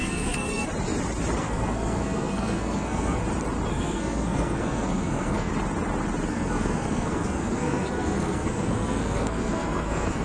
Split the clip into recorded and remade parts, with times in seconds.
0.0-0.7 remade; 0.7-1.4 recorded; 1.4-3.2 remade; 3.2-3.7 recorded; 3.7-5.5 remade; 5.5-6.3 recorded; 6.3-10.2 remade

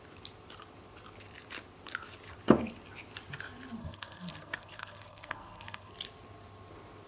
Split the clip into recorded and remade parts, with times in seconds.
0.0-3.8 recorded; 3.8-5.9 remade; 5.9-7.1 recorded

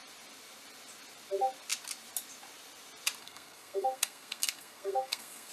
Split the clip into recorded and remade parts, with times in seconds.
0.0-3.2 recorded; 3.2-5.5 remade

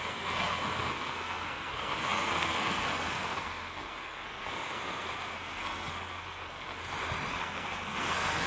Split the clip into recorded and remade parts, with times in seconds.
0.0-6.8 remade; 6.8-7.3 recorded; 7.3-8.5 remade

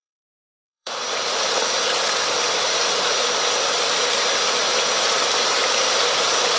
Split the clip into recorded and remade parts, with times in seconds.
0.0-1.0 remade; 1.0-6.6 recorded

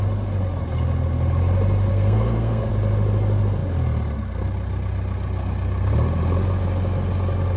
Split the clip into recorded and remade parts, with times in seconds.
0.0-1.9 recorded; 1.9-2.7 remade; 2.7-7.6 recorded